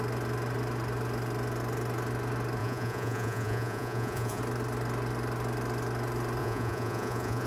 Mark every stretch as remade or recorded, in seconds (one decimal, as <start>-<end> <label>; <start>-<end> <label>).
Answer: 0.0-2.6 recorded; 2.6-4.4 remade; 4.4-6.4 recorded; 6.4-7.5 remade